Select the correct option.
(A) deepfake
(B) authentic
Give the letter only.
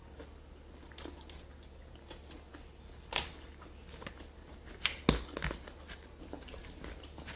B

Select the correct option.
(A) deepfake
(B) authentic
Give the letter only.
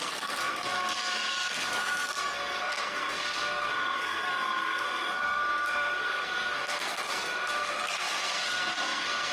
A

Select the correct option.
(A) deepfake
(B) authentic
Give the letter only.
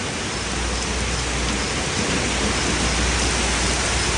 B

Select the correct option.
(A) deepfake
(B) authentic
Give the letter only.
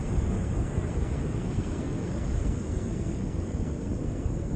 A